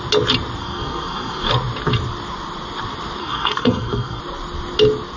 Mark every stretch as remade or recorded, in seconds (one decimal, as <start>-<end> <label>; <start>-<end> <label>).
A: 0.0-0.6 recorded; 0.6-1.5 remade; 1.5-3.2 recorded; 3.2-4.2 remade; 4.2-5.2 recorded